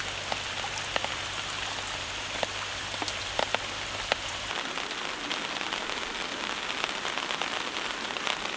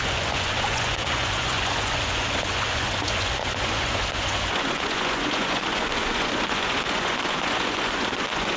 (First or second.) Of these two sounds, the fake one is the second